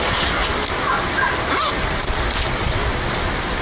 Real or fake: real